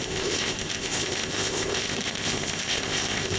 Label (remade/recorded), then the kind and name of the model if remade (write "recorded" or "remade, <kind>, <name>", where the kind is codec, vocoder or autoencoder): remade, codec, ZipCodec